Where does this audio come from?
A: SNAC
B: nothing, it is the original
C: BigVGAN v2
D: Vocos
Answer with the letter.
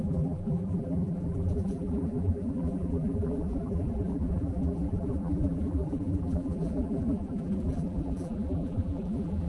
C